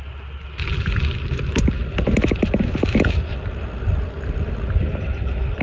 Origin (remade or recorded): recorded